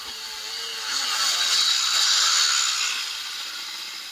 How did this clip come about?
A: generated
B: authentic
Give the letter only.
B